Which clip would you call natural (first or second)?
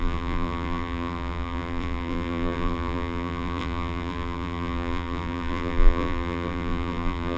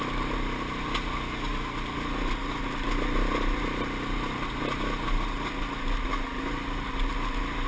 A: second